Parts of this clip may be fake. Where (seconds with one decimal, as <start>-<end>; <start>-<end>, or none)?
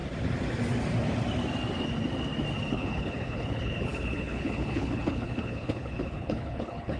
2.7-7.0